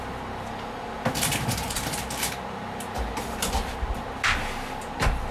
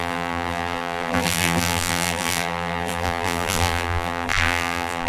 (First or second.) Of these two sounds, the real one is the first